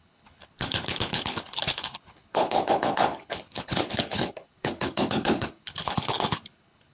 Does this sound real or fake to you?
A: fake